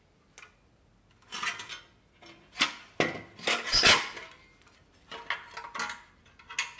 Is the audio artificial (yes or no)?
no